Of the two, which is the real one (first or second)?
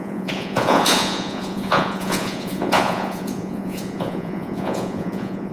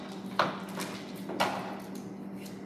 second